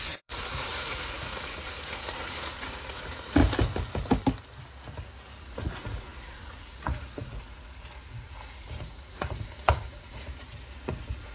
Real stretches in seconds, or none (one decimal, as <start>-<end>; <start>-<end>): 3.4-5.4